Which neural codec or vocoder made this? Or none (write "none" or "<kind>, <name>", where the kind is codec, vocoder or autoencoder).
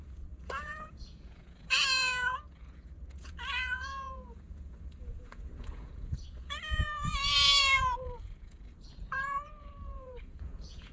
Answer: vocoder, Vocos